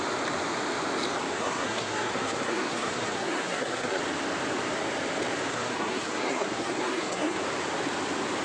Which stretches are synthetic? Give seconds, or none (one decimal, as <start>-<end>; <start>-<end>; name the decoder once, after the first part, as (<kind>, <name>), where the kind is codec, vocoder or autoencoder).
1.3-4.0 (codec, SNAC); 5.5-7.4